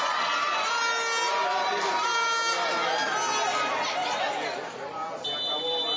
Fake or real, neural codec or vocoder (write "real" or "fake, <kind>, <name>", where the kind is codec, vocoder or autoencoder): real